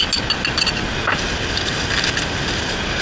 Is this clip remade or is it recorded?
recorded